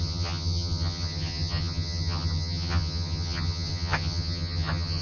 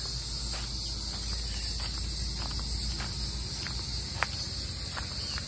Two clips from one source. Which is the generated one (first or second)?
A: first